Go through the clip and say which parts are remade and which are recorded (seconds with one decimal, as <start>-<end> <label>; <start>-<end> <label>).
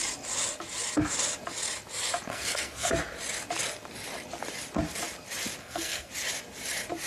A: 0.0-2.3 recorded; 2.3-2.9 remade; 2.9-5.6 recorded; 5.6-6.1 remade; 6.1-7.1 recorded